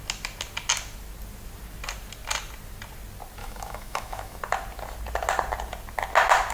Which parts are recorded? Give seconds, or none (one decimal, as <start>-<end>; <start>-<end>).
0.0-3.4; 4.4-6.5